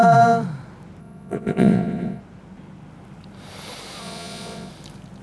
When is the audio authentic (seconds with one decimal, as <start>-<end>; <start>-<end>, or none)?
0.0-1.0; 2.2-4.0; 4.7-5.2